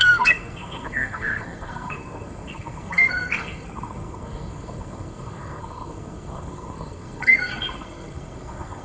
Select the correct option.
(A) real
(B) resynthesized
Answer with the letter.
B